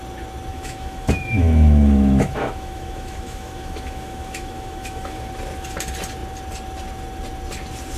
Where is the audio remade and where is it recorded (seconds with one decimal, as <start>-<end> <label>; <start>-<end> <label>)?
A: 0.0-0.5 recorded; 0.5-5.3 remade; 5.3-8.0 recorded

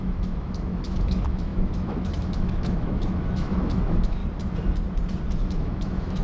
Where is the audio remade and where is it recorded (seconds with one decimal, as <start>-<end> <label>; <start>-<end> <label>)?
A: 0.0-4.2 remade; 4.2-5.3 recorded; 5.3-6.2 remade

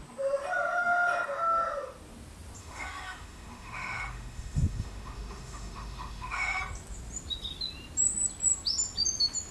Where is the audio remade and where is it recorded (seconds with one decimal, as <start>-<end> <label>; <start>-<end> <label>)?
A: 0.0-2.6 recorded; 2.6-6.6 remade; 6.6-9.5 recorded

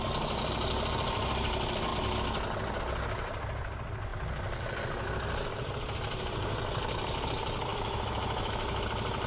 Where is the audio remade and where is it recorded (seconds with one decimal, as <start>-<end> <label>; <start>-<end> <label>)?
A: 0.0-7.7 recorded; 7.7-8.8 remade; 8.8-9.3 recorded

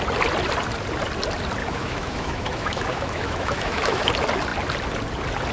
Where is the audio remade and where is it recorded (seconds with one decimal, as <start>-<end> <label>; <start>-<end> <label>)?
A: 0.0-1.6 recorded; 1.6-4.1 remade; 4.1-5.5 recorded